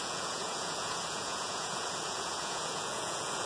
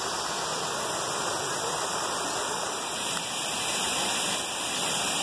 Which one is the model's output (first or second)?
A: first